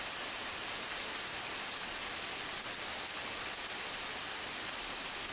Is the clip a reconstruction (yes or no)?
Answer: no